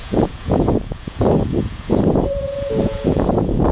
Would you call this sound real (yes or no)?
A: no